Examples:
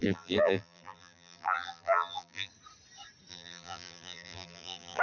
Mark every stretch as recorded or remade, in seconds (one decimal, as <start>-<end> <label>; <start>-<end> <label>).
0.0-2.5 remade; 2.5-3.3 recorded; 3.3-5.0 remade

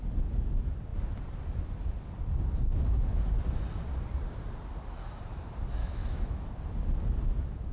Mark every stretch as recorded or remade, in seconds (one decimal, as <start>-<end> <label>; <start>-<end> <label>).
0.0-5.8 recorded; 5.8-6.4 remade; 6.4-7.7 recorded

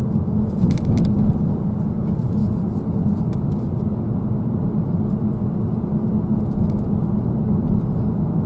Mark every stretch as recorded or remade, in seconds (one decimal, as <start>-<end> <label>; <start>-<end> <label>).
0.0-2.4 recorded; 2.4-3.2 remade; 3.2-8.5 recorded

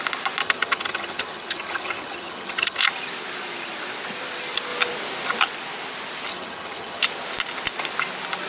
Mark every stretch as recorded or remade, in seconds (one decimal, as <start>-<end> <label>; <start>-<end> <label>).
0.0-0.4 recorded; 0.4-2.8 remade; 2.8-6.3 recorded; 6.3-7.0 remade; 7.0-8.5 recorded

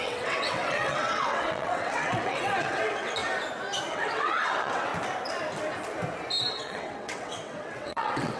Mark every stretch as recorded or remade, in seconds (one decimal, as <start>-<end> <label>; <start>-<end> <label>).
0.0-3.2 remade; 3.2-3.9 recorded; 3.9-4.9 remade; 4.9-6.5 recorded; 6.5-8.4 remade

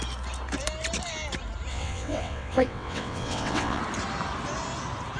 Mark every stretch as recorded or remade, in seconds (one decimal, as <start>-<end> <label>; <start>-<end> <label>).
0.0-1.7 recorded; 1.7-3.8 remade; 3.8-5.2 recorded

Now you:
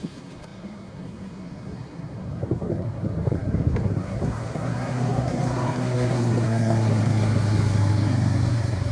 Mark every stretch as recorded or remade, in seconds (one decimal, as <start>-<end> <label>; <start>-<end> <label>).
0.0-8.9 remade

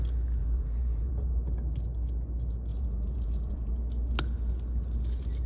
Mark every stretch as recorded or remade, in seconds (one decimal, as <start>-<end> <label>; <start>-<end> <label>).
0.0-0.4 recorded; 0.4-1.4 remade; 1.4-2.7 recorded; 2.7-3.7 remade; 3.7-5.5 recorded